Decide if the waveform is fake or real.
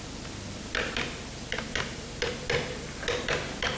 real